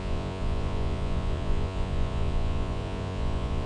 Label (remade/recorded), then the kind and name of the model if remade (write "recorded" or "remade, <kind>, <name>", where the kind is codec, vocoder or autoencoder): remade, vocoder, Vocos